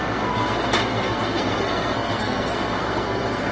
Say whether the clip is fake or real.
fake